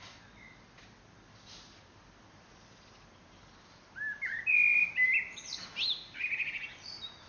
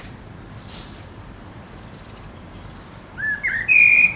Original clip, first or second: first